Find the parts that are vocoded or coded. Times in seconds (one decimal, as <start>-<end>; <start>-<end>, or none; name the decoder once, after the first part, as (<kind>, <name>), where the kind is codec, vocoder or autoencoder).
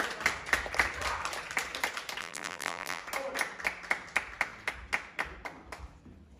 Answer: 2.2-3.0 (vocoder, BigVGAN v2)